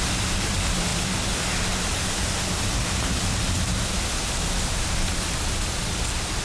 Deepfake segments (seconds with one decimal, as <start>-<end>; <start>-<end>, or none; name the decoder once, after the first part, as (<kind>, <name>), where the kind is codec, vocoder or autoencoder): none